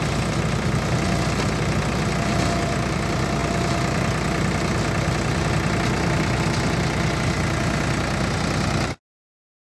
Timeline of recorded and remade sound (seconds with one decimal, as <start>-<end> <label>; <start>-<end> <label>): 0.0-9.7 recorded